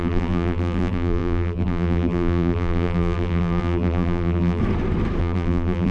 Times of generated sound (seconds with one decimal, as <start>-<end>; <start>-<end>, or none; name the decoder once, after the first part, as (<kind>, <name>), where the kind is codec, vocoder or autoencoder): 0.0-4.6 (vocoder, BigVGAN v2); 5.2-5.9